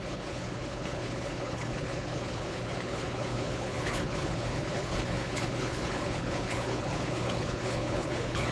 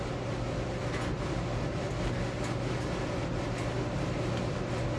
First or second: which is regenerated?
first